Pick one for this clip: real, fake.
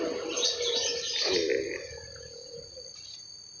real